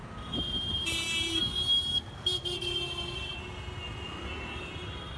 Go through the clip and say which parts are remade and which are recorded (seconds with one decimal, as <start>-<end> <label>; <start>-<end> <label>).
0.0-1.4 remade; 1.4-5.2 recorded